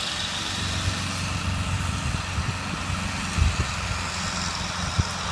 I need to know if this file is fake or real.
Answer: real